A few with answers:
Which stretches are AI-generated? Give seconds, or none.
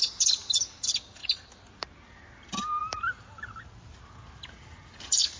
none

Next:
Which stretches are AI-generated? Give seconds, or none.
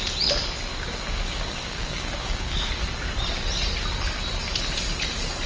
0.7-2.7 (codec, DAC)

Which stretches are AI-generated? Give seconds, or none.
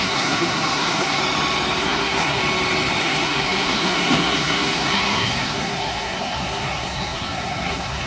0.0-1.2 (codec, SNAC); 1.8-2.4; 3.0-8.1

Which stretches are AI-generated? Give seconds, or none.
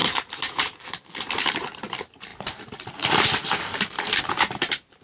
0.0-5.0 (vocoder, BigVGAN v2)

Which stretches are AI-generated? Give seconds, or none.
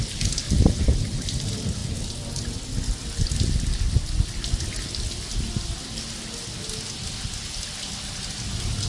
none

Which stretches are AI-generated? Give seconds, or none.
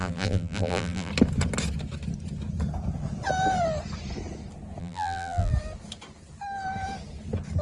0.0-1.1 (vocoder, BigVGAN v2); 4.8-5.5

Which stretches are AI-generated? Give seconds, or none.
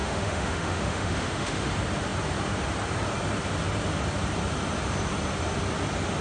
0.0-1.7 (autoencoder, DAC-VAE)